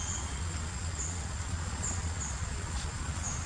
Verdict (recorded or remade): remade